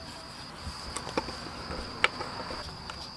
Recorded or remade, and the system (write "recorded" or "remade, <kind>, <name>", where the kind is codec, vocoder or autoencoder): recorded